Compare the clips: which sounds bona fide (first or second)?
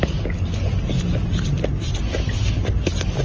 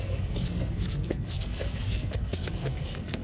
first